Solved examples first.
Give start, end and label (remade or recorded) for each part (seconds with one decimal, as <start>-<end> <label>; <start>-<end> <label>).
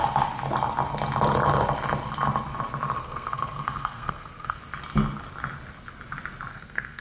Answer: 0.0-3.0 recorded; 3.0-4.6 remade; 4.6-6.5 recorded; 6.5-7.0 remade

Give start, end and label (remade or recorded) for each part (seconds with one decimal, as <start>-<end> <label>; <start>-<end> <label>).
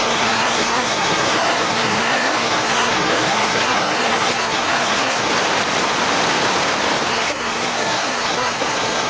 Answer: 0.0-5.3 remade; 5.3-7.1 recorded; 7.1-9.1 remade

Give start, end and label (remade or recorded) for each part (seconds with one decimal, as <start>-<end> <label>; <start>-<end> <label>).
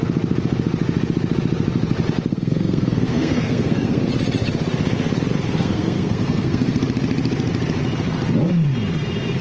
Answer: 0.0-2.3 recorded; 2.3-4.1 remade; 4.1-5.5 recorded; 5.5-6.8 remade; 6.8-9.4 recorded